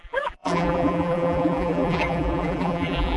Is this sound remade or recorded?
remade